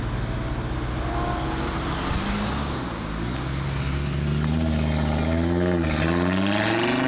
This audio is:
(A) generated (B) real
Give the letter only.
B